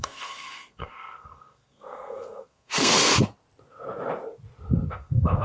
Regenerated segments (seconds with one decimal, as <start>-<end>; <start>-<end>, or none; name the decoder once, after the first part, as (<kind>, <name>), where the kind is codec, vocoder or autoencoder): 0.0-3.1 (codec, SNAC); 4.9-5.4

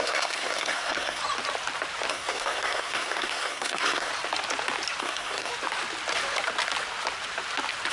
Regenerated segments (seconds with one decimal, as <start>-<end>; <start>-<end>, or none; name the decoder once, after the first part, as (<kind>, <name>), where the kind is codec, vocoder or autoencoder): 0.0-1.2 (codec, SNAC); 2.1-4.1; 5.0-5.5